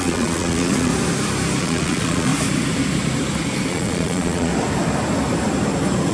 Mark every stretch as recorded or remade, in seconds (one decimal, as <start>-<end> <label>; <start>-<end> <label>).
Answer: 0.0-0.9 remade; 0.9-1.6 recorded; 1.6-2.3 remade; 2.3-3.7 recorded; 3.7-4.5 remade; 4.5-6.1 recorded